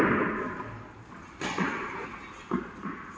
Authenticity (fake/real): real